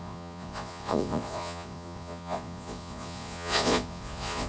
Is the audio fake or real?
fake